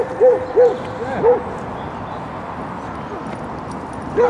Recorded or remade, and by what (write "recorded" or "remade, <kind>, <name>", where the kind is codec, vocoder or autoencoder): remade, vocoder, BigVGAN v2